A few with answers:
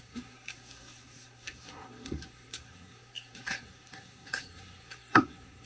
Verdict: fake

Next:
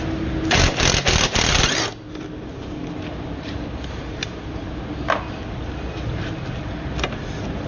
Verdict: real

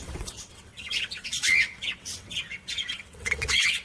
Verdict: fake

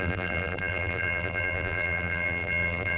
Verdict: fake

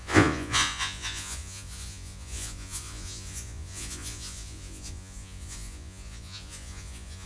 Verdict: fake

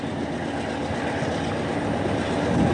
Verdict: real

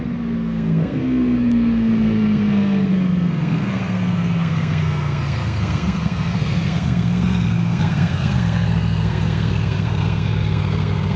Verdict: fake